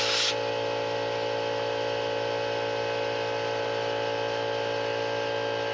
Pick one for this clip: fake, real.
real